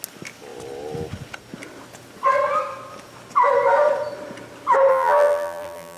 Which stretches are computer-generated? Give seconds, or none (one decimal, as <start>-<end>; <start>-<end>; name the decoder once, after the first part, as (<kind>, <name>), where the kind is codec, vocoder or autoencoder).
4.9-6.0 (vocoder, BigVGAN v2)